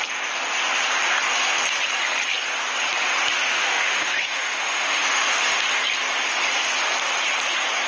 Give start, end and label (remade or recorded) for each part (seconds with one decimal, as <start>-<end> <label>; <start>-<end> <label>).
0.0-3.4 recorded; 3.4-5.4 remade; 5.4-7.9 recorded

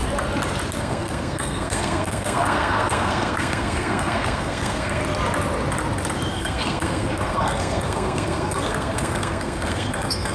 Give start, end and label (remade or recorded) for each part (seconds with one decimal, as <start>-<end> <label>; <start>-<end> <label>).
0.0-0.8 recorded; 0.8-5.0 remade; 5.0-6.3 recorded; 6.3-10.3 remade

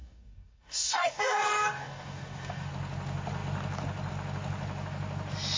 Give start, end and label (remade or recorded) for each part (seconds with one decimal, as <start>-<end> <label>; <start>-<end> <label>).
0.0-2.7 remade; 2.7-5.6 recorded

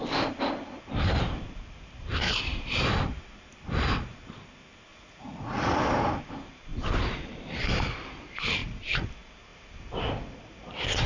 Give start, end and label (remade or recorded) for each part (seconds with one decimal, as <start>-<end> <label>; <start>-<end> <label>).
0.0-4.9 recorded; 4.9-5.8 remade; 5.8-8.6 recorded; 8.6-9.1 remade; 9.1-11.1 recorded

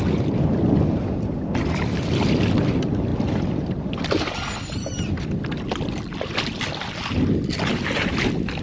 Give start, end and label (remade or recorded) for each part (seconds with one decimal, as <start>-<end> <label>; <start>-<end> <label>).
0.0-8.6 recorded

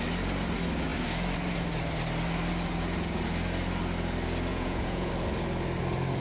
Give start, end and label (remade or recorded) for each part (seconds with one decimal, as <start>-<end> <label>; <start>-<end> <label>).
0.0-4.5 recorded; 4.5-5.1 remade; 5.1-6.2 recorded